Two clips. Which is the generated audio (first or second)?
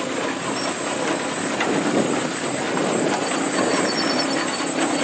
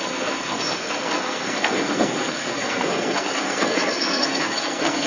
second